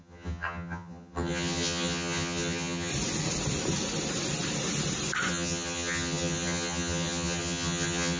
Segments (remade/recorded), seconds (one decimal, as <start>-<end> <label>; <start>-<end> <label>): 0.0-2.9 remade; 2.9-5.3 recorded; 5.3-8.2 remade